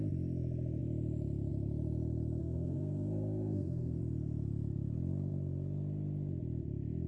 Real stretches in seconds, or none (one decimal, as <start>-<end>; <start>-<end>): 0.0-2.4; 4.0-7.1